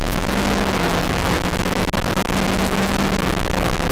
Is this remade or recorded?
remade